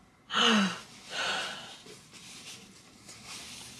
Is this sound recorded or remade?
recorded